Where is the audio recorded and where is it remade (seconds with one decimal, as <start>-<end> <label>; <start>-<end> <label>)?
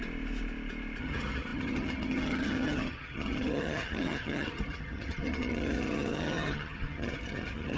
0.0-1.0 recorded; 1.0-7.8 remade